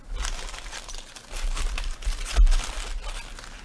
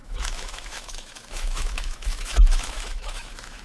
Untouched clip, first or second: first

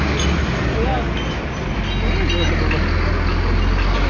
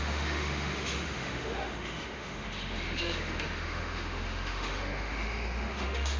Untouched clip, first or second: first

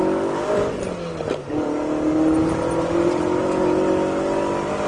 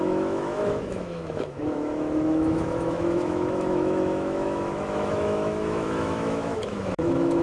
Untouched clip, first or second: first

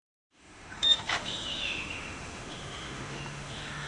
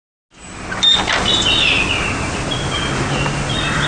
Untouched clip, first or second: second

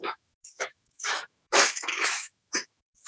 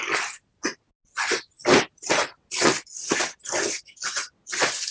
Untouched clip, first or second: second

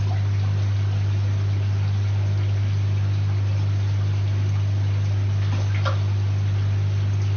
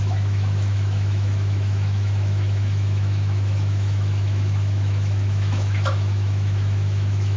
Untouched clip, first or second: first